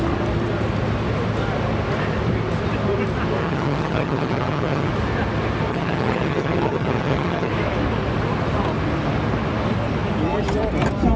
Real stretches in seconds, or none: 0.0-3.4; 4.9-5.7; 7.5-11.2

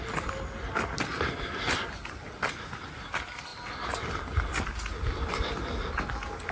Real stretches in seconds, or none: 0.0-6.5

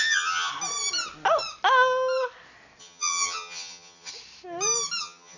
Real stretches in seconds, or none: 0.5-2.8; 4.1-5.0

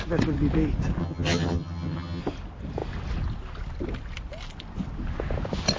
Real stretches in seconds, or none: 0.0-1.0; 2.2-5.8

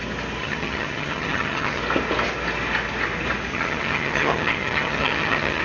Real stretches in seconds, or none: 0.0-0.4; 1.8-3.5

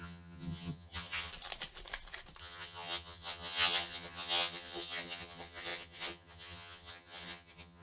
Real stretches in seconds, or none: 1.3-2.4

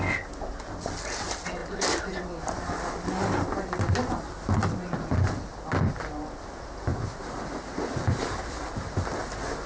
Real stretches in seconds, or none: 0.0-9.7